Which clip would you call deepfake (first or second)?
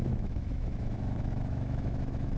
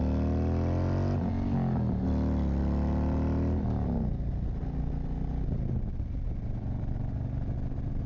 first